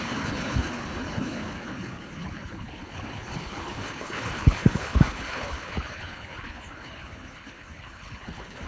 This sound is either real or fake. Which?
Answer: fake